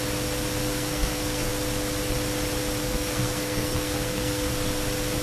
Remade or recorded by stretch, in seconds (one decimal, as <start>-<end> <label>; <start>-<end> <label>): 0.0-0.6 recorded; 0.6-1.5 remade; 1.5-2.8 recorded; 2.8-4.5 remade; 4.5-5.2 recorded